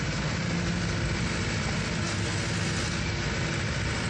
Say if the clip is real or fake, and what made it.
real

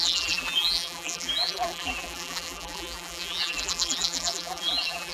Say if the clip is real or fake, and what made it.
fake, vocoder, BigVGAN v2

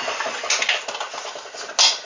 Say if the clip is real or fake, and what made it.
real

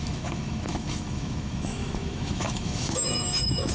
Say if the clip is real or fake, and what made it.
fake, autoencoder, DAC-VAE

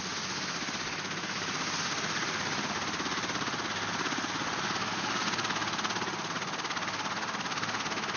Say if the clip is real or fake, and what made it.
real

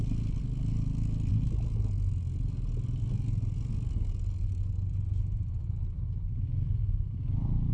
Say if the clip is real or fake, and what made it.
real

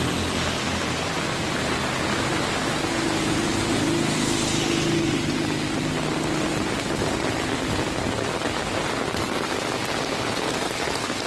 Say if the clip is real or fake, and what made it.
real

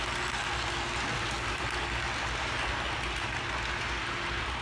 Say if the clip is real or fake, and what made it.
real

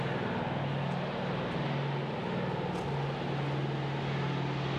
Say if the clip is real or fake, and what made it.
real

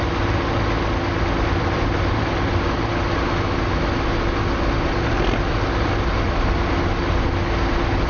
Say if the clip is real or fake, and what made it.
real